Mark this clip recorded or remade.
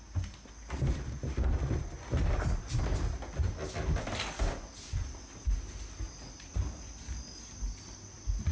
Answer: recorded